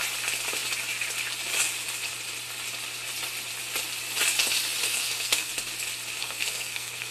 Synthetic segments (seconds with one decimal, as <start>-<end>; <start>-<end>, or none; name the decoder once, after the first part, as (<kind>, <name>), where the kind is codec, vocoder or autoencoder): 4.8-5.5 (codec, SNAC); 6.2-7.1